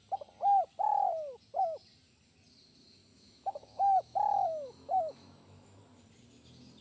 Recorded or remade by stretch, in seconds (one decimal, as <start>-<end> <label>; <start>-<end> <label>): 0.0-3.0 recorded; 3.0-5.8 remade; 5.8-6.8 recorded